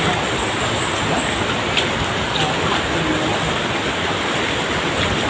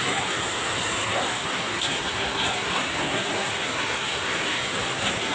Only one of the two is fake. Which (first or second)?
second